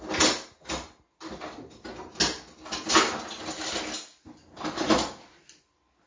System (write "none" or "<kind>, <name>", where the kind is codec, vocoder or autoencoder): none